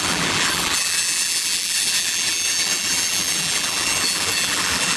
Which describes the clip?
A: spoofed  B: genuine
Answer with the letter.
A